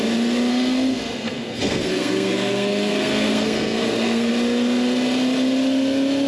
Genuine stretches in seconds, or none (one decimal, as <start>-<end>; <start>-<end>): 0.0-0.5; 4.3-6.3